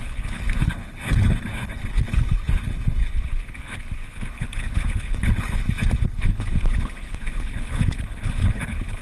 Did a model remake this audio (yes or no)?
yes